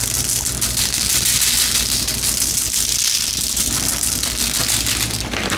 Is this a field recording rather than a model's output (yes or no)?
yes